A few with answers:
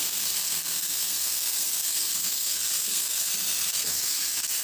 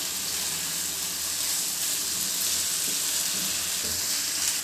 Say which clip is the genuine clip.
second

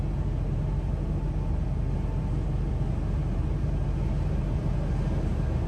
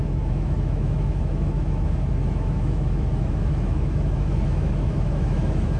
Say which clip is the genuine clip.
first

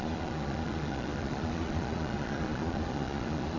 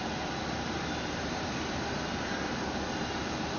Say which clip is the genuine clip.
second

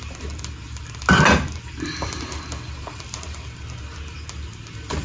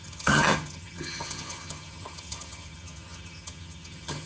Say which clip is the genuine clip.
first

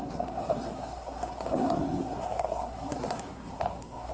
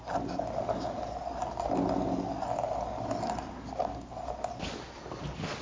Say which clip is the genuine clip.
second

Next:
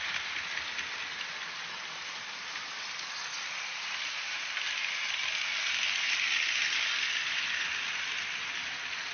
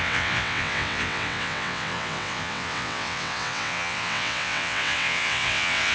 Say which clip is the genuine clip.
first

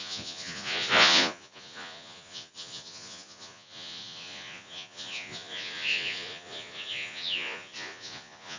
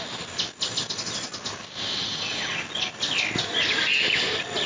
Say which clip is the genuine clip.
second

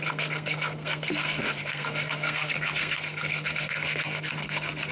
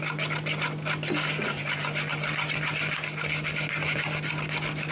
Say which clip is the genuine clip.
second